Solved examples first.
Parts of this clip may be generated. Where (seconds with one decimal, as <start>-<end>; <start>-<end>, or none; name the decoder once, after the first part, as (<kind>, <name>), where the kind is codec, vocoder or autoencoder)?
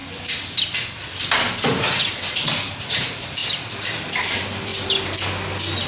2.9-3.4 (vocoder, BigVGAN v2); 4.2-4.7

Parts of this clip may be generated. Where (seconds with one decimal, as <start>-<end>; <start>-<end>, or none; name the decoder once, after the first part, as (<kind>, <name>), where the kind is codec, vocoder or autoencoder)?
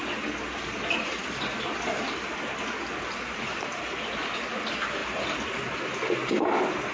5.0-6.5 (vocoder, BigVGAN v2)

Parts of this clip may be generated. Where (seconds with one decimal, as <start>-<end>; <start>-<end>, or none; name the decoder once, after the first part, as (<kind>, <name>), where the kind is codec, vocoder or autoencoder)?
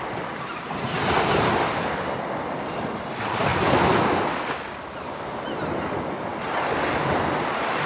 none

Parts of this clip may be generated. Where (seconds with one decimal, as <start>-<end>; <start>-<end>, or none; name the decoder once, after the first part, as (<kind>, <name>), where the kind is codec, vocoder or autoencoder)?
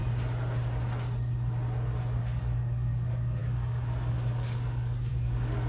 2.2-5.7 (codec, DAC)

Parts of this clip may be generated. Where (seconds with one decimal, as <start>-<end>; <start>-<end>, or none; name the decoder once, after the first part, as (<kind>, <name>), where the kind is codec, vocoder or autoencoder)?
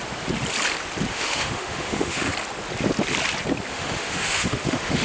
1.1-2.3 (autoencoder, DAC-VAE); 3.7-5.0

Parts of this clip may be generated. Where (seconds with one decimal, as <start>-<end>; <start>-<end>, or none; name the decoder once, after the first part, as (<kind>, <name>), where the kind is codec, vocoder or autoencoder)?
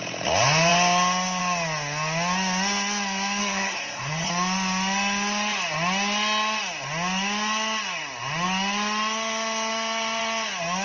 3.4-4.3 (codec, SNAC)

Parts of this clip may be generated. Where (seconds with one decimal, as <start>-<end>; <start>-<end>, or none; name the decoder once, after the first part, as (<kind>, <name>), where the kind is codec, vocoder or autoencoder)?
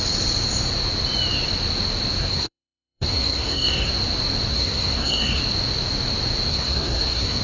2.2-3.9 (codec, SNAC); 4.5-5.4; 6.5-7.4